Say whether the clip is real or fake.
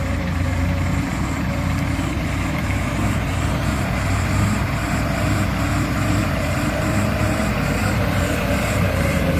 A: fake